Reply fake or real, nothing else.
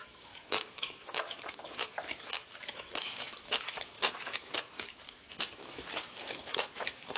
fake